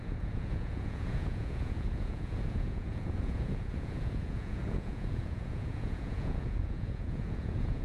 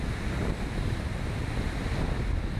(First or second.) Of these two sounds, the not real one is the first